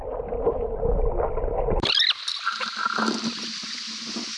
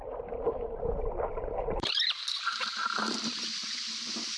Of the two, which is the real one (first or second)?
first